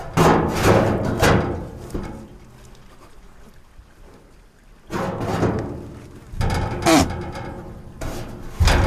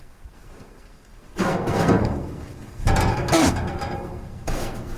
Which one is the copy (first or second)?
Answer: second